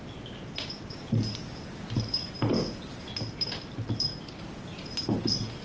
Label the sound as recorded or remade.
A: recorded